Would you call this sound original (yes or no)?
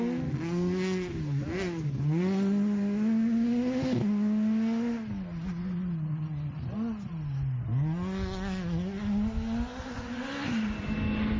yes